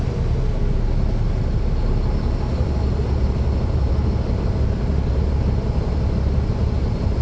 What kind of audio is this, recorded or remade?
recorded